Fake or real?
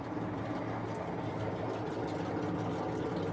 real